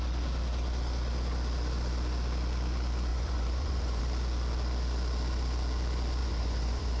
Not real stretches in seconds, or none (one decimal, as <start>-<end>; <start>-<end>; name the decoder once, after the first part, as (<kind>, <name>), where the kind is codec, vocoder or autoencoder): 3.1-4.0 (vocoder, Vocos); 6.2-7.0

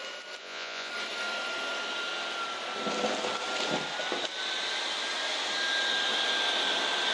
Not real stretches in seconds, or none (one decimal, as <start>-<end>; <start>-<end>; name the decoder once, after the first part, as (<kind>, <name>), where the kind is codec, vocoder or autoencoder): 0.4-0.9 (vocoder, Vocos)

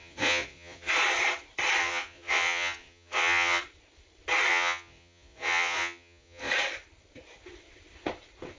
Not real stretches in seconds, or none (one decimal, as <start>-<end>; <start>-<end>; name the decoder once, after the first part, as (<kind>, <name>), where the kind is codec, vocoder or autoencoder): 0.0-0.9 (vocoder, Vocos); 1.8-3.6; 4.5-6.5

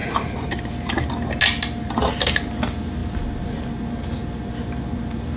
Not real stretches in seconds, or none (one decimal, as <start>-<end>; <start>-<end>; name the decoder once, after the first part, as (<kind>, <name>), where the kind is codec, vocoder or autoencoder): none

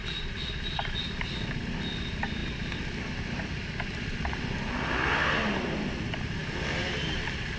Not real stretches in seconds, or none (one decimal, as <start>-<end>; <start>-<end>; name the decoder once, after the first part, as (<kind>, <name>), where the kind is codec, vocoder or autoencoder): none

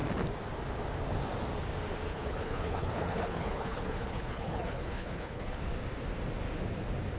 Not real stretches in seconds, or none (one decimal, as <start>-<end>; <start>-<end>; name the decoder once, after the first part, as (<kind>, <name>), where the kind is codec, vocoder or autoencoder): 2.1-5.6 (codec, HILCodec)

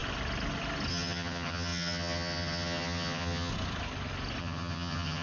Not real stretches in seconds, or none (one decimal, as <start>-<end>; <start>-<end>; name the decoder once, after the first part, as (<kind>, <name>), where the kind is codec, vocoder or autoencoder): 0.9-3.5 (vocoder, HiFi-GAN); 4.4-5.2